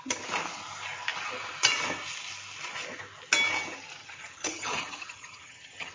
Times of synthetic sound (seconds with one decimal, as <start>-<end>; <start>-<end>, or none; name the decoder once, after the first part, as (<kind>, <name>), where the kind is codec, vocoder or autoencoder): 4.0-5.9 (vocoder, HiFi-GAN)